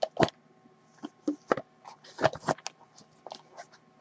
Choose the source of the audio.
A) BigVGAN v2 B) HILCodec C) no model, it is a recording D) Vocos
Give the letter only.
C